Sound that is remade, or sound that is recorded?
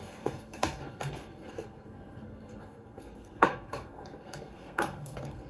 remade